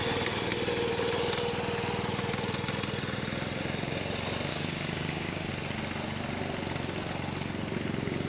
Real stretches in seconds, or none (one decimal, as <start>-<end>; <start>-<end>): 0.0-4.5; 5.5-8.3